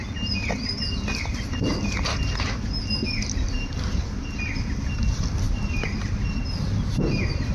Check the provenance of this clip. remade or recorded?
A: recorded